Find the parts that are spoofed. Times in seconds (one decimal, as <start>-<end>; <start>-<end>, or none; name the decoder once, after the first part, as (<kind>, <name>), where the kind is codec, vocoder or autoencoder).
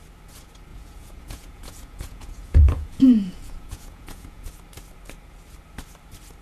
0.7-4.5 (vocoder, Vocos)